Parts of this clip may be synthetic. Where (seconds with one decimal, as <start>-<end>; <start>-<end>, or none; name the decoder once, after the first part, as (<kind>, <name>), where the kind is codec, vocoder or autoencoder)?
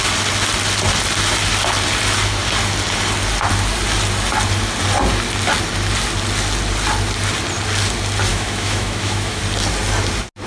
8.3-9.4 (autoencoder, DAC-VAE)